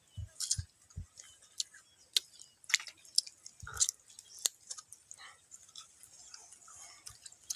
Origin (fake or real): real